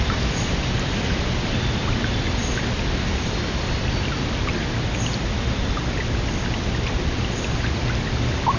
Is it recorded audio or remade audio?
recorded